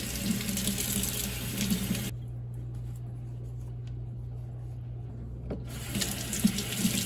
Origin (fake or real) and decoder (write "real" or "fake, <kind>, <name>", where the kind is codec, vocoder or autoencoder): real